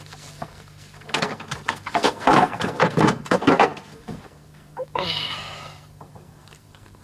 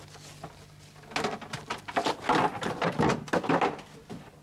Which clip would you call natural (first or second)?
second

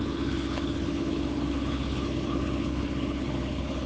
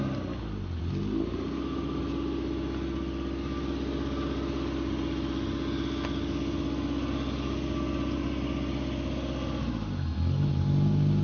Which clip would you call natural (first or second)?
second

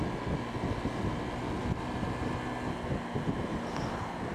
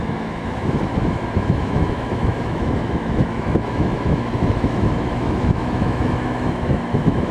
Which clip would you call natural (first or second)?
first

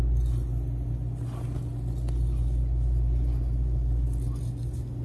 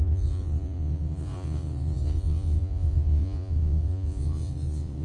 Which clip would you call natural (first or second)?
first